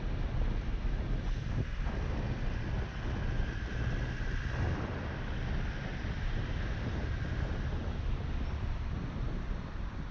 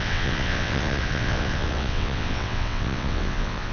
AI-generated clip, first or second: second